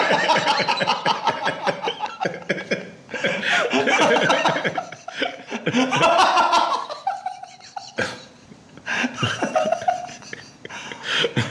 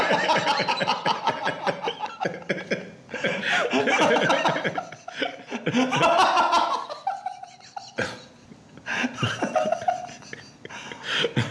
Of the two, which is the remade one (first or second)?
first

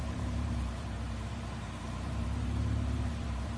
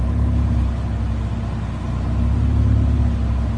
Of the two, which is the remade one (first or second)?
first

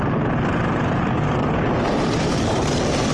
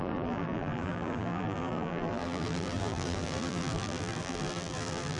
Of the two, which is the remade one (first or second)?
second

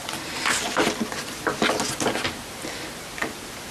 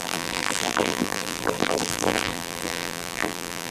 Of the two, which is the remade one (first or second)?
second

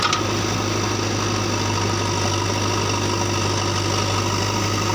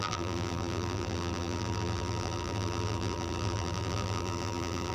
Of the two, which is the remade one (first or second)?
second